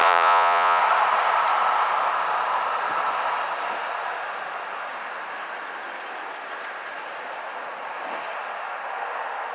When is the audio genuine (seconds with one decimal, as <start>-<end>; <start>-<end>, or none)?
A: 0.8-9.5